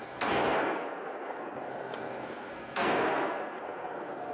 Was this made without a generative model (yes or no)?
no